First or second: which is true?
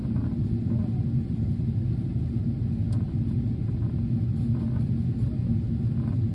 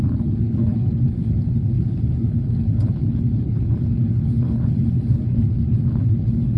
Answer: first